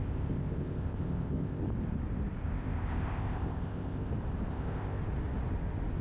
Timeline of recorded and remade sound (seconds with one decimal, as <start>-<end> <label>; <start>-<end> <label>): 0.0-1.6 remade; 1.6-2.4 recorded; 2.4-4.1 remade; 4.1-4.5 recorded; 4.5-5.0 remade; 5.0-6.0 recorded